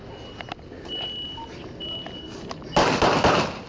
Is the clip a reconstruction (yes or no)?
no